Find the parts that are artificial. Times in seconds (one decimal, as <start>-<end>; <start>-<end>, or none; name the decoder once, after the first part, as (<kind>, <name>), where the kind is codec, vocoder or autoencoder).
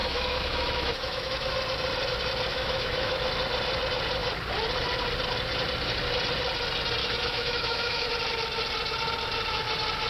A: 0.0-1.5 (autoencoder, DAC-VAE); 2.5-3.1; 7.0-8.1